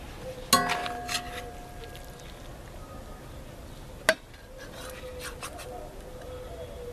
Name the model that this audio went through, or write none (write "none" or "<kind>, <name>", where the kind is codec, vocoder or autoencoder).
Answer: none